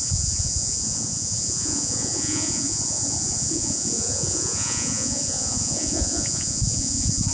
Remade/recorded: remade